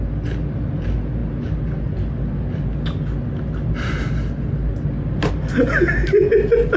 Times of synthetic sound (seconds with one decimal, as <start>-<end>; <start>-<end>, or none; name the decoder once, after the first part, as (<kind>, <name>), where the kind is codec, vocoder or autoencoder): none